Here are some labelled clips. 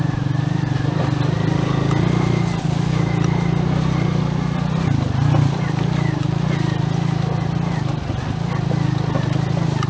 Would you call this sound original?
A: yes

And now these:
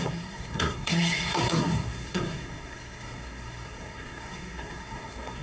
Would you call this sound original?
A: no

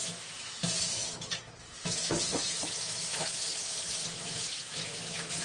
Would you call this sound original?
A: no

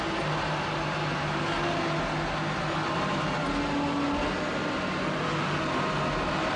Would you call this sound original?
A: yes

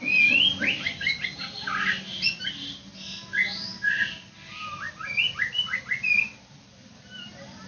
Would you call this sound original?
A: yes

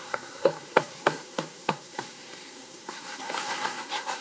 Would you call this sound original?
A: no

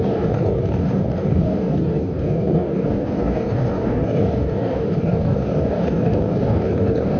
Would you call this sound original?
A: no